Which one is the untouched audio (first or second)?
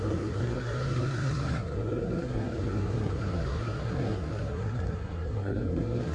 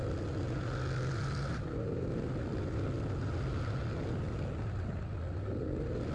second